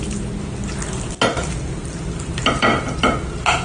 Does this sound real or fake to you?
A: real